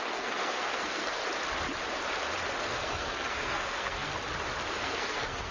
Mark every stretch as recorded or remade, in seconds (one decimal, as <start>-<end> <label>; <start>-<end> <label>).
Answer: 0.0-1.2 remade; 1.2-2.6 recorded; 2.6-4.1 remade; 4.1-4.7 recorded; 4.7-5.5 remade